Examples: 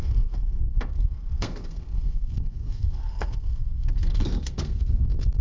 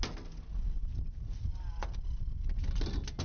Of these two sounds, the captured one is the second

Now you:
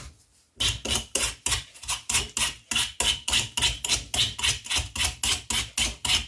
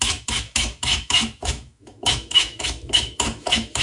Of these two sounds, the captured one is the first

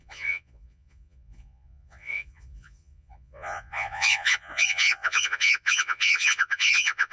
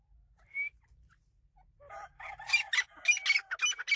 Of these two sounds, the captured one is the second